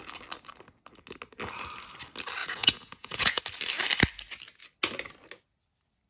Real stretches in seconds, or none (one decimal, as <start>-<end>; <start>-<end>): 0.0-2.4; 3.4-6.1